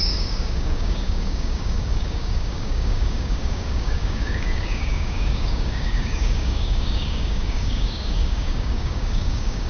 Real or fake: fake